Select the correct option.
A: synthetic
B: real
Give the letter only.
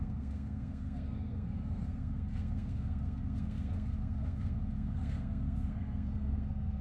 A